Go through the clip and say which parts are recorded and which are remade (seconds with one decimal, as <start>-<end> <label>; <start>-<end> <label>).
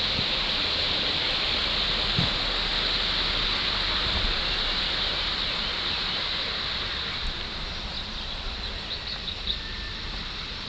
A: 0.0-1.6 remade; 1.6-3.9 recorded; 3.9-7.9 remade; 7.9-8.7 recorded; 8.7-10.7 remade